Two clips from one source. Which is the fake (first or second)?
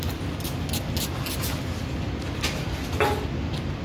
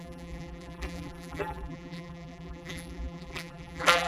second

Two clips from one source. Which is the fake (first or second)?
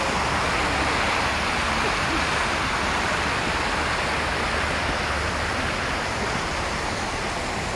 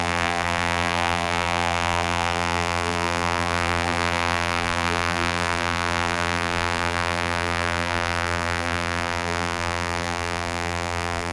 second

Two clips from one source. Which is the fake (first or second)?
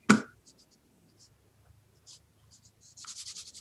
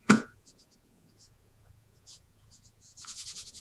second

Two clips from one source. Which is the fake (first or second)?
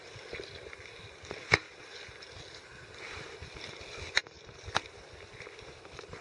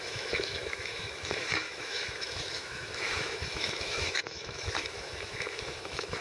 second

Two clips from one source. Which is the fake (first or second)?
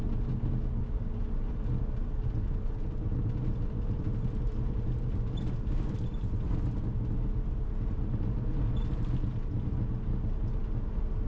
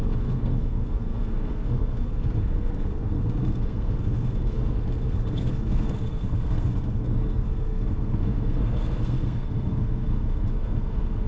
second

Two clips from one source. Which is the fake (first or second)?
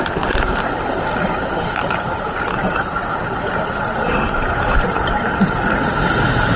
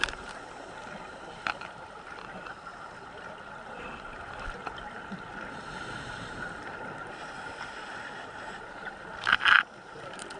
second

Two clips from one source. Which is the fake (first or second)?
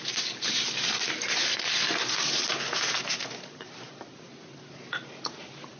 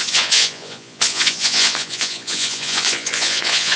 second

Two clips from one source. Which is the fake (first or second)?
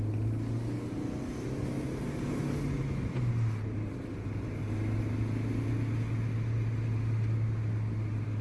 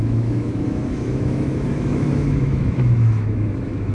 second